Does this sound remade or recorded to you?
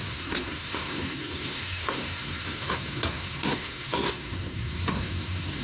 remade